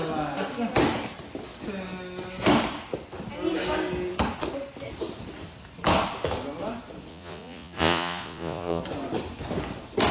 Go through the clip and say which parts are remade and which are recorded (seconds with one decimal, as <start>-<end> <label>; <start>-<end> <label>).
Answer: 0.0-7.1 recorded; 7.1-8.8 remade; 8.8-10.1 recorded